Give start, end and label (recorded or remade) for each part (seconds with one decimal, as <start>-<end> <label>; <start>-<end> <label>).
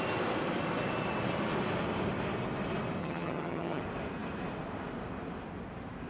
0.0-3.0 recorded; 3.0-3.8 remade; 3.8-6.1 recorded